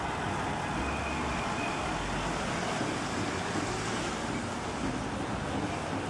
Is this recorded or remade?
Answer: recorded